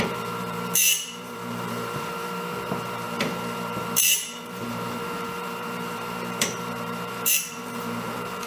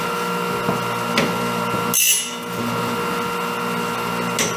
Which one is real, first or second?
second